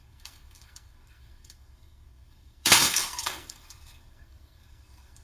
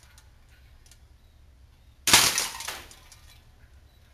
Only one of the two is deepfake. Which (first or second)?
first